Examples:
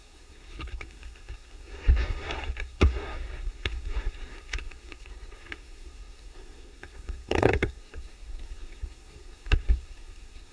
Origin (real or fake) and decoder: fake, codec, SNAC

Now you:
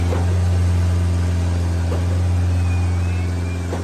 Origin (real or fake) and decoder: real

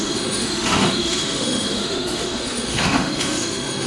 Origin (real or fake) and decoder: fake, autoencoder, DAC-VAE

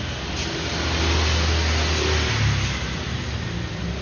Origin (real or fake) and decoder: real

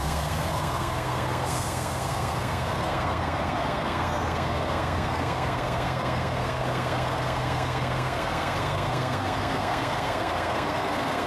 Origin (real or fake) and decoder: fake, codec, SNAC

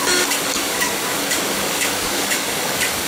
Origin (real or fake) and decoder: fake, codec, DAC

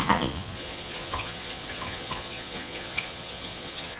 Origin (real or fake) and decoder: fake, vocoder, Vocos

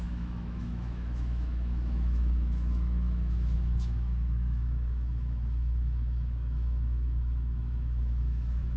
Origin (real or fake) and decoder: fake, autoencoder, DAC-VAE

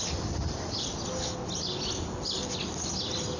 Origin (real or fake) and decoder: real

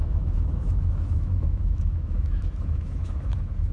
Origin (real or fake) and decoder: fake, autoencoder, DAC-VAE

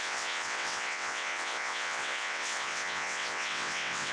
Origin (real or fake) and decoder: fake, vocoder, WaveNeXt